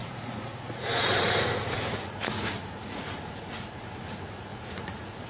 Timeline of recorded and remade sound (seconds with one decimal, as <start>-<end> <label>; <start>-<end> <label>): 0.0-5.3 remade